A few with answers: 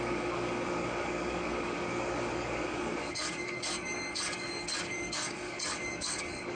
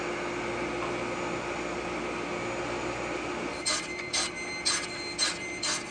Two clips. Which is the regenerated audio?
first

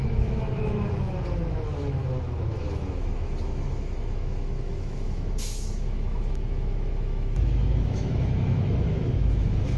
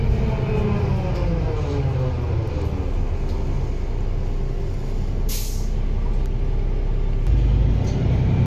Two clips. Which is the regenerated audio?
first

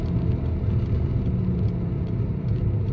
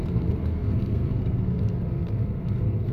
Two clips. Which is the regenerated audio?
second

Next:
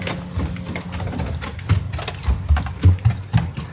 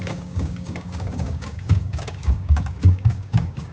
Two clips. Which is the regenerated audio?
second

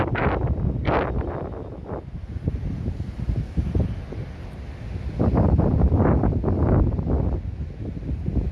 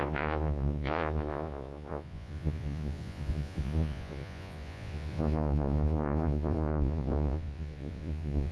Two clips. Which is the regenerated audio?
second